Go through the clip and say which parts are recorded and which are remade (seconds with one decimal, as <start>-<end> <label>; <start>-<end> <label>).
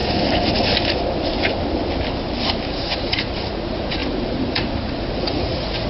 0.0-2.7 recorded; 2.7-5.9 remade